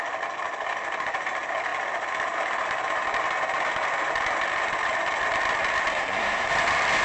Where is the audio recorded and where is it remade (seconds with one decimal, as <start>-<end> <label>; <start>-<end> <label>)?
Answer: 0.0-5.9 recorded; 5.9-6.5 remade; 6.5-7.0 recorded